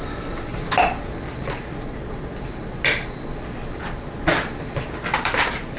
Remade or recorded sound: recorded